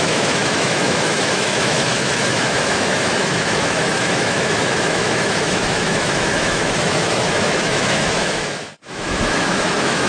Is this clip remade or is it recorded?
remade